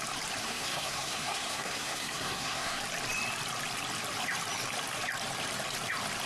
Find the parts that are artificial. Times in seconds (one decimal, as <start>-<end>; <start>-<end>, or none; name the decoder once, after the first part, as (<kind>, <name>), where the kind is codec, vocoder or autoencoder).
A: 0.4-2.8 (codec, SNAC)